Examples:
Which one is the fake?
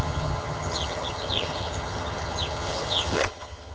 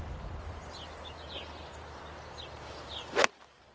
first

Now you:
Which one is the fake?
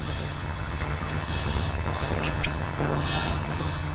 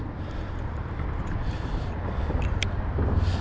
first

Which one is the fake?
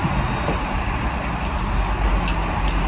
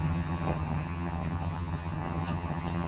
second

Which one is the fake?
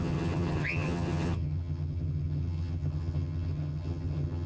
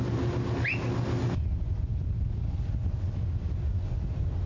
first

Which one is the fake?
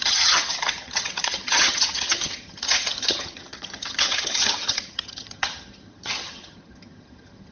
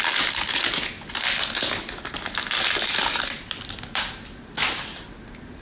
first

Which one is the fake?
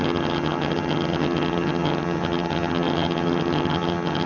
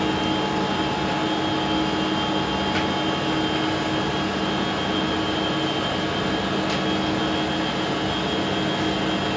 first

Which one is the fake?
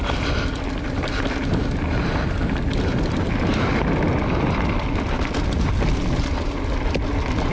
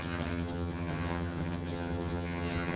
second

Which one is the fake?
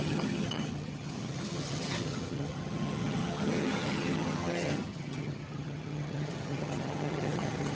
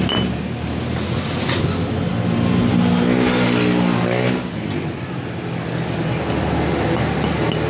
first